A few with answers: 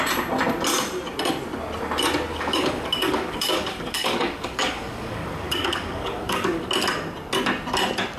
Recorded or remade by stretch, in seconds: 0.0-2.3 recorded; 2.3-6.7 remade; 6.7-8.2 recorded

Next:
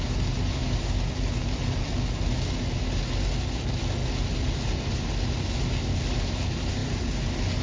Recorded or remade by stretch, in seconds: 0.0-7.6 recorded

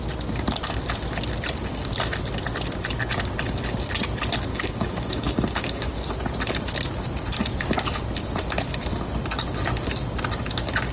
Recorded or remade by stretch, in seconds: 0.0-4.5 recorded; 4.5-5.9 remade; 5.9-10.9 recorded

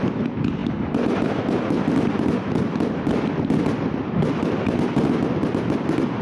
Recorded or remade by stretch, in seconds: 0.0-6.2 recorded

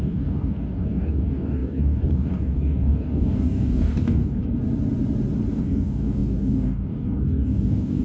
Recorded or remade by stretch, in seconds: 0.0-4.4 remade; 4.4-5.5 recorded; 5.5-8.0 remade

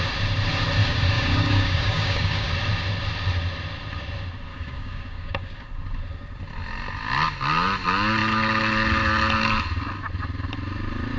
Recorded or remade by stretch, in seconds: 0.0-0.8 recorded; 0.8-2.5 remade; 2.5-4.5 recorded; 4.5-5.8 remade; 5.8-11.2 recorded

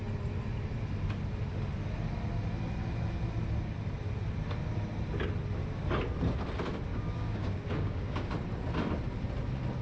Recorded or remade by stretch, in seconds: 0.0-6.9 recorded; 6.9-8.3 remade; 8.3-9.8 recorded

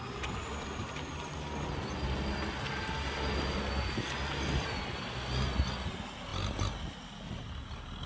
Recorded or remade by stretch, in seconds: 0.0-8.1 recorded